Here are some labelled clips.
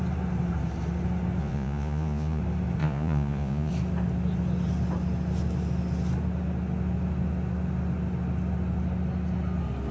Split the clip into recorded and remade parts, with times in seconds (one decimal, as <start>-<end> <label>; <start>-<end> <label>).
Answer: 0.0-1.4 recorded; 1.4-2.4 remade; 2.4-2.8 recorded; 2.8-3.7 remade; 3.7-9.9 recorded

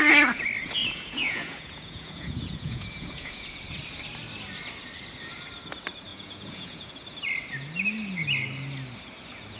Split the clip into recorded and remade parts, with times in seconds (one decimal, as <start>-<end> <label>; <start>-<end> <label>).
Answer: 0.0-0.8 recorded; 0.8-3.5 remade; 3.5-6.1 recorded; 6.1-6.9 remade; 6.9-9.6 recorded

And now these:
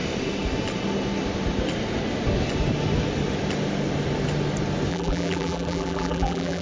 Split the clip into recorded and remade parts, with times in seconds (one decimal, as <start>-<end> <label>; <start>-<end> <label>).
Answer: 0.0-4.9 recorded; 4.9-6.6 remade

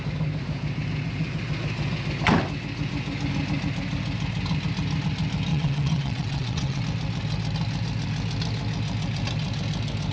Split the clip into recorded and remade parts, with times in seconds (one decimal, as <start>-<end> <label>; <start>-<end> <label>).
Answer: 0.0-5.5 recorded; 5.5-6.8 remade; 6.8-10.1 recorded

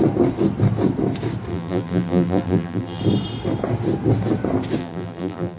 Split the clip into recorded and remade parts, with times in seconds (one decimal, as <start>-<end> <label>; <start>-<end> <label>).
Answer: 0.0-1.5 recorded; 1.5-3.0 remade; 3.0-4.8 recorded; 4.8-5.6 remade

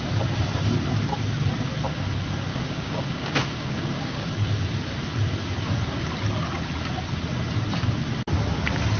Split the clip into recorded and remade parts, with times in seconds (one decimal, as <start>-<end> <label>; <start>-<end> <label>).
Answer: 0.0-2.5 recorded; 2.5-4.3 remade; 4.3-9.0 recorded

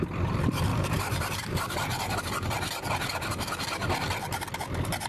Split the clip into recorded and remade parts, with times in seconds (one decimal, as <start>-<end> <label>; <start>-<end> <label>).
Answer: 0.0-0.7 recorded; 0.7-2.2 remade; 2.2-5.1 recorded

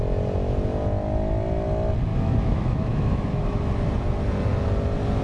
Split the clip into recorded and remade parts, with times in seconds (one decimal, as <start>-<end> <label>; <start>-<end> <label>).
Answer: 0.0-2.1 recorded; 2.1-3.7 remade; 3.7-5.2 recorded